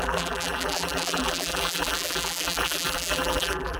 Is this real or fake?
fake